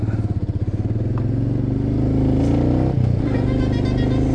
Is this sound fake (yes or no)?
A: no